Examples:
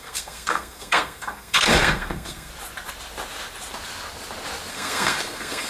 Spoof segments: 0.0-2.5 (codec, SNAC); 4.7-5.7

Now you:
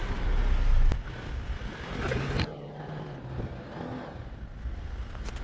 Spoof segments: none

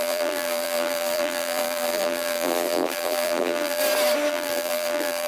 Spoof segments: 0.0-3.8 (vocoder, BigVGAN v2); 4.3-5.3

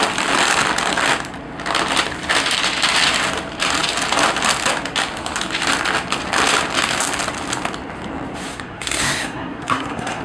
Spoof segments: 8.5-10.2 (codec, SNAC)

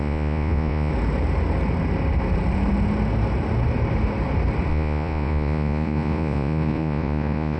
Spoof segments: 0.0-0.9 (vocoder, Vocos); 4.7-7.6

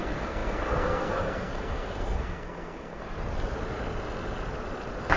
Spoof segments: 0.0-3.0 (codec, SNAC)

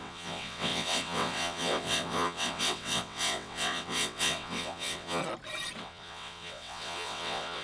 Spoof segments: 0.0-5.2 (vocoder, WaveNeXt); 5.8-7.6